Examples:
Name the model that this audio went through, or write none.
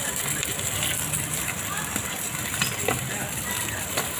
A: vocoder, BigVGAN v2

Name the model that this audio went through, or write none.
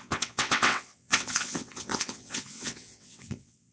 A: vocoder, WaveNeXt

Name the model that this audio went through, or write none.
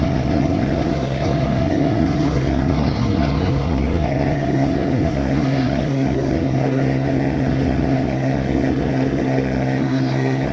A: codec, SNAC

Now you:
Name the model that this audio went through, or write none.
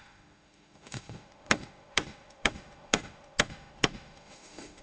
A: autoencoder, DAC-VAE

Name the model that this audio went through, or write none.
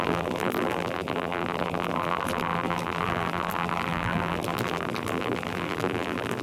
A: vocoder, BigVGAN v2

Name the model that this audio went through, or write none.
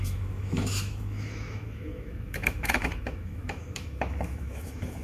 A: autoencoder, DAC-VAE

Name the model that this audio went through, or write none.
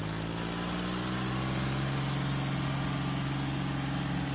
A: none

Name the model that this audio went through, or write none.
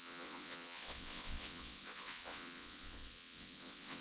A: vocoder, WaveNeXt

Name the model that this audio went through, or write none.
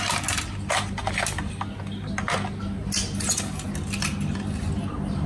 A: none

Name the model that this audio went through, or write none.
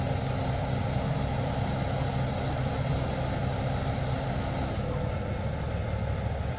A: none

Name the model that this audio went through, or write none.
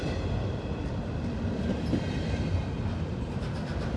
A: vocoder, BigVGAN v2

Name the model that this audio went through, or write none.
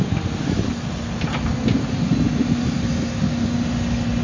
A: none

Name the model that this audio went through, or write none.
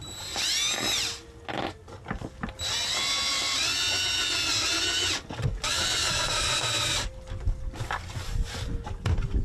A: none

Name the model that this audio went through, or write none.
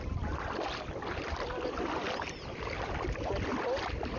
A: none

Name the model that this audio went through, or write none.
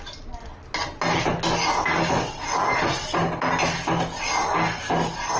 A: none